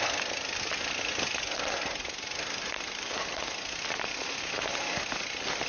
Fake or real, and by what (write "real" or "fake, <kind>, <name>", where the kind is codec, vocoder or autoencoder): real